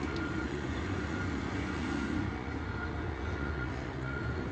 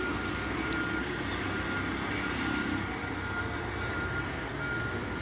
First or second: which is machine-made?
first